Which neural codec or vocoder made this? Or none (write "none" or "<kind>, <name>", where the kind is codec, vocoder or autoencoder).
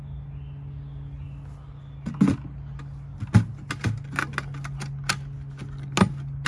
none